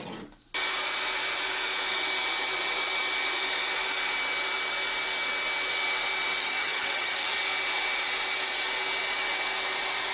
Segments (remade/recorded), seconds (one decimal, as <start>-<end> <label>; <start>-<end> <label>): 0.0-6.4 recorded; 6.4-7.4 remade; 7.4-10.1 recorded